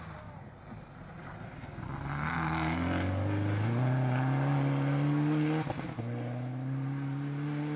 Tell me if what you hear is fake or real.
real